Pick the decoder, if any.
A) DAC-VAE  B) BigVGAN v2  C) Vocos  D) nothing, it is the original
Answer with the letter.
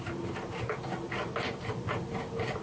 D